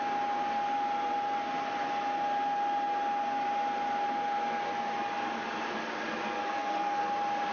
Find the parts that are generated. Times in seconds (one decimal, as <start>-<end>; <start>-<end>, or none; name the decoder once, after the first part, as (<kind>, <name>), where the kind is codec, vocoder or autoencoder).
6.4-7.0 (codec, SNAC)

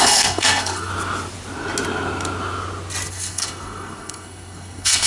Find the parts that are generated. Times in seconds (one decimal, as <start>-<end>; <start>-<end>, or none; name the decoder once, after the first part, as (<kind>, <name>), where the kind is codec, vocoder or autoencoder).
0.0-0.9 (codec, SNAC); 3.1-5.1

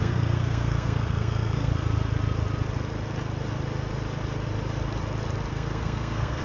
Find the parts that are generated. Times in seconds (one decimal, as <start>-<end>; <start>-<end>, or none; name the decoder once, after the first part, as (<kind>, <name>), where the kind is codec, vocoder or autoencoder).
0.0-1.7 (codec, SNAC); 5.5-6.4

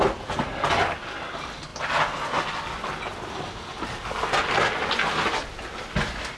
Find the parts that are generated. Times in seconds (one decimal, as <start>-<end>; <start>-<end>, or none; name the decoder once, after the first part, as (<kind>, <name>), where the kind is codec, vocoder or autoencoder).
none

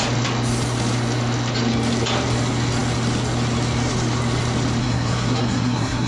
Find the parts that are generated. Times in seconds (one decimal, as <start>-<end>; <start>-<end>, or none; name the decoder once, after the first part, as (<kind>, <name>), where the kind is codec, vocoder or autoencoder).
4.8-6.1 (codec, SNAC)

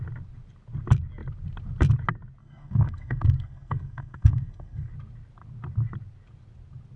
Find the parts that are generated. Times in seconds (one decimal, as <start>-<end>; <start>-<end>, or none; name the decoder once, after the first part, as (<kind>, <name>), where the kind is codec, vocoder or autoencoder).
2.4-4.9 (codec, SNAC)

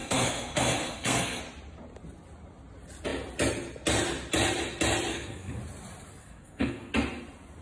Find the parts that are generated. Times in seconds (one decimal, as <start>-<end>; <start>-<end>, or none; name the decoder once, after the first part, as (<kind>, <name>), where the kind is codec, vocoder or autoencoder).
0.0-1.4 (codec, SNAC); 5.1-5.6; 6.2-6.9

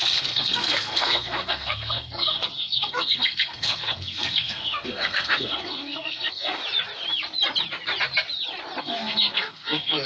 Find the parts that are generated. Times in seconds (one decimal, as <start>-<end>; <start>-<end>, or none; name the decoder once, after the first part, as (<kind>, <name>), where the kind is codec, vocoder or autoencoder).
0.0-6.6 (codec, SNAC); 8.8-10.1